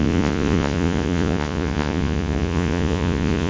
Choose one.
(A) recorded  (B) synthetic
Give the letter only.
B